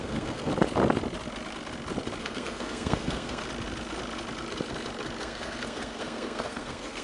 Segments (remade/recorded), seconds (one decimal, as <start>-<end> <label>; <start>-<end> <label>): 0.0-0.5 remade; 0.5-2.2 recorded; 2.2-3.4 remade; 3.4-5.2 recorded; 5.2-7.0 remade